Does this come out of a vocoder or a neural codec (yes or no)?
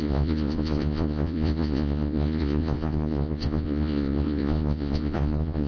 yes